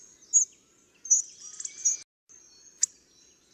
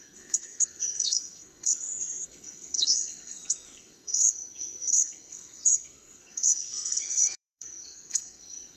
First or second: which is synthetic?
second